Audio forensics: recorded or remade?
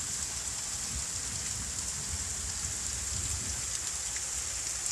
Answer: recorded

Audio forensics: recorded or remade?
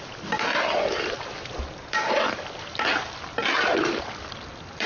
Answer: remade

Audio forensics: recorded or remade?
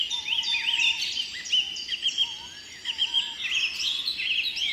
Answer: recorded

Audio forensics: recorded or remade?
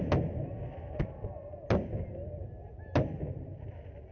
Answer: recorded